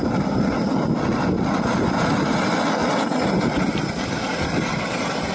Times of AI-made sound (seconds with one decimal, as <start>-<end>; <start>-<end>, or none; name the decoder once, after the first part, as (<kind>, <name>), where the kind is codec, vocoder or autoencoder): none